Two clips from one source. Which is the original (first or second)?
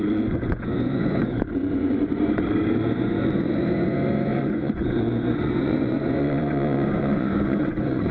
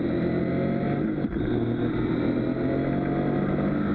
second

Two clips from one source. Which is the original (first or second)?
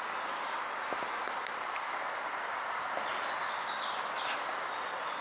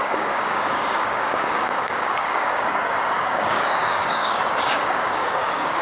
first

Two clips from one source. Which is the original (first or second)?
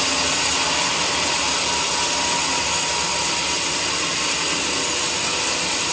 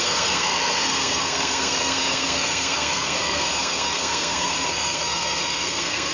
first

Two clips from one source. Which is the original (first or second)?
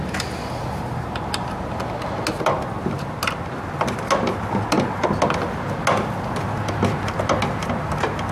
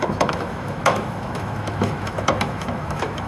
first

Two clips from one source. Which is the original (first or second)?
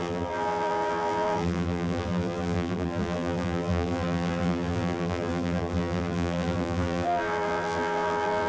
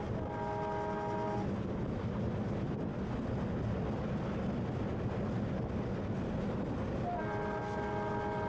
second